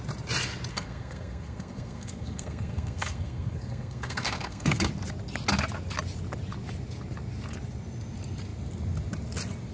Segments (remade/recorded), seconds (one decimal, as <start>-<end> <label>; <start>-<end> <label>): 0.0-0.7 recorded; 0.7-4.9 remade; 4.9-9.7 recorded